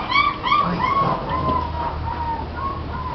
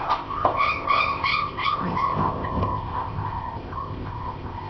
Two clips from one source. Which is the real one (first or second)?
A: first